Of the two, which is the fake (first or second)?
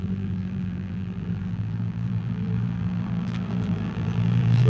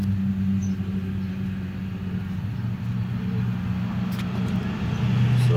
first